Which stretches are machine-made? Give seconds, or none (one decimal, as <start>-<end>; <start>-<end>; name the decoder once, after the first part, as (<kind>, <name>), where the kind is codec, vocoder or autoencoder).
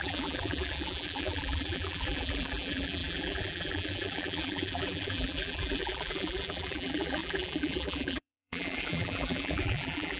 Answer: 0.0-10.2 (vocoder, BigVGAN v2)